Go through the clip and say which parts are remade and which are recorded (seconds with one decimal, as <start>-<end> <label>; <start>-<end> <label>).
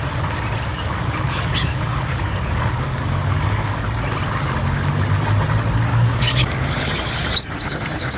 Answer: 0.0-0.7 recorded; 0.7-3.8 remade; 3.8-5.9 recorded; 5.9-8.2 remade